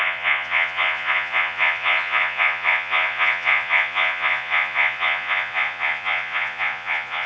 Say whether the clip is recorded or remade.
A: remade